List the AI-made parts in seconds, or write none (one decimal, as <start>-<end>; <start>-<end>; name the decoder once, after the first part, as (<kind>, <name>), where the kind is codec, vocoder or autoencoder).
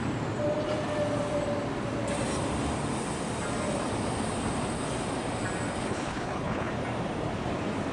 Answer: 5.8-6.7 (codec, HILCodec)